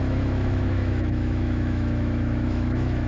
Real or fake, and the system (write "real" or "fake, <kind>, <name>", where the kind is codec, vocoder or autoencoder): fake, autoencoder, DAC-VAE